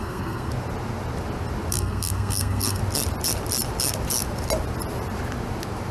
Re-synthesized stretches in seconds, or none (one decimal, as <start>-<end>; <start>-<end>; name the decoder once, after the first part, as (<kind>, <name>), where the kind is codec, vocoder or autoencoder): 0.0-0.5 (codec, SNAC); 1.7-2.8